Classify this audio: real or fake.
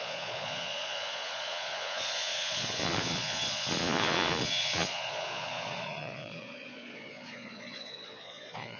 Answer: fake